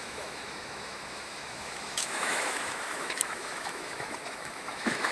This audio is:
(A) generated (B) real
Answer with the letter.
A